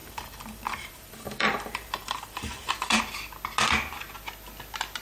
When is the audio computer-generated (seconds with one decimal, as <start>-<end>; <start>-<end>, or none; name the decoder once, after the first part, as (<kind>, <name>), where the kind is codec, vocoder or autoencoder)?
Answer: 0.0-3.0 (vocoder, BigVGAN v2)